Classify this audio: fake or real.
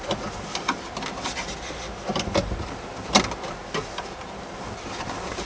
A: real